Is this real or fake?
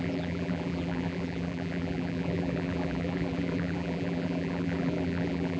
fake